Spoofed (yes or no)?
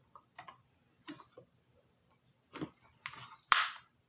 yes